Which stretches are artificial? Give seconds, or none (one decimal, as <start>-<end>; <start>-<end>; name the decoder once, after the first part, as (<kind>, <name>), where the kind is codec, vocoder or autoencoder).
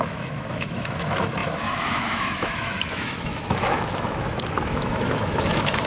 0.0-5.9 (autoencoder, DAC-VAE)